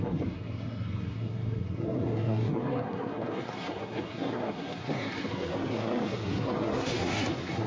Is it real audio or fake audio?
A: fake